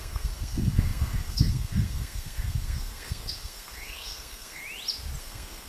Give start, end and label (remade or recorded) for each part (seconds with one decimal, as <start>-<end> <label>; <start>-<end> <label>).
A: 0.0-4.6 remade; 4.6-5.2 recorded; 5.2-5.7 remade